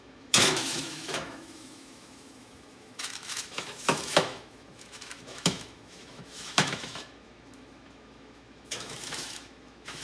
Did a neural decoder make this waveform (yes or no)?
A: yes